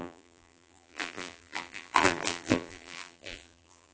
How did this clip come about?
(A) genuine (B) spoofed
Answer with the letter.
B